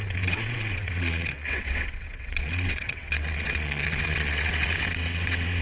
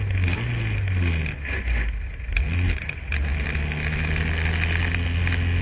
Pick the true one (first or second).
second